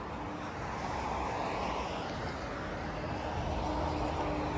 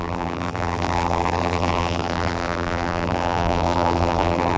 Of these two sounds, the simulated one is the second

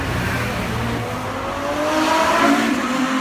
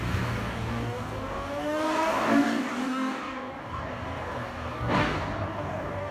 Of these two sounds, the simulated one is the second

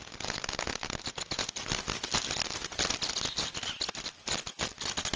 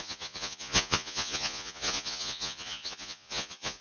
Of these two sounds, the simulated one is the second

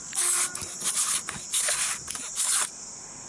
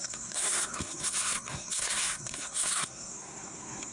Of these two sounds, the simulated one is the second